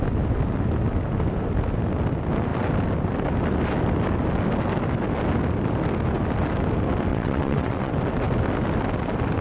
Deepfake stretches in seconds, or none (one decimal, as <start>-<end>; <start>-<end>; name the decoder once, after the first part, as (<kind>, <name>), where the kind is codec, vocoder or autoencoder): 7.1-7.9 (vocoder, WaveNeXt)